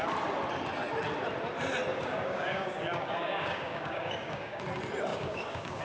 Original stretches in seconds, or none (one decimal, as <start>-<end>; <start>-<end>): 0.0-1.9; 4.6-5.1